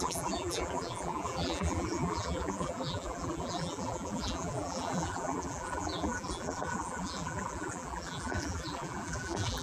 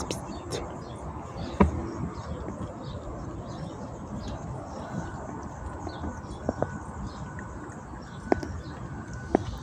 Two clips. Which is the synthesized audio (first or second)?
first